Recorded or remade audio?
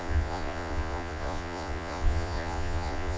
remade